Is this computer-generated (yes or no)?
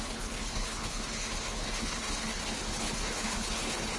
yes